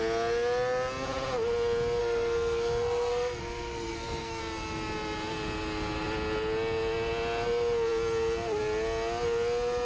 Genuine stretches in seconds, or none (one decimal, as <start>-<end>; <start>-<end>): 0.0-2.0; 4.4-9.8